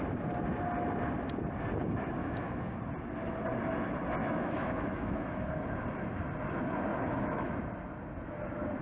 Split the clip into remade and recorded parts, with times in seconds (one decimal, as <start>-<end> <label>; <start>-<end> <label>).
0.0-2.2 recorded; 2.2-2.8 remade; 2.8-4.2 recorded; 4.2-5.5 remade; 5.5-6.9 recorded; 6.9-7.5 remade; 7.5-8.8 recorded